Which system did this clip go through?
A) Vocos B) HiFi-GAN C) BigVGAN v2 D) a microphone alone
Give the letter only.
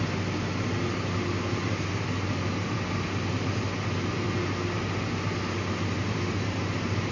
D